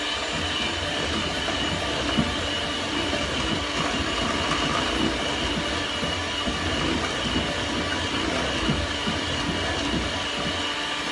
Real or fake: real